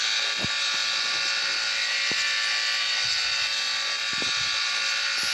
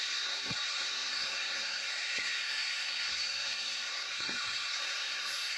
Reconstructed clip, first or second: second